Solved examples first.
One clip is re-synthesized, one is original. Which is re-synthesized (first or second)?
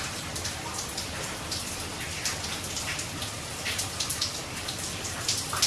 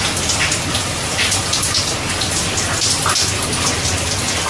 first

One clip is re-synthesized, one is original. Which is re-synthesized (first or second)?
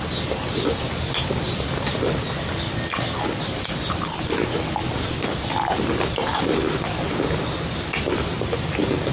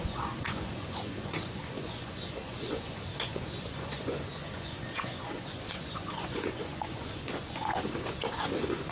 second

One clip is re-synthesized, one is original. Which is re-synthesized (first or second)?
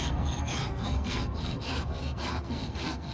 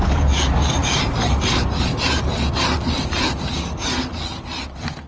first